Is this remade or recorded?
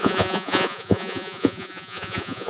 remade